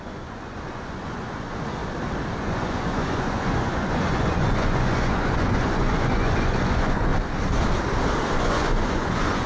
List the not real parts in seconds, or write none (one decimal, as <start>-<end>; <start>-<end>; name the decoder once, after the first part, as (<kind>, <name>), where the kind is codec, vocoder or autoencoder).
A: 0.0-1.8 (vocoder, Vocos); 2.4-7.1; 8.4-9.5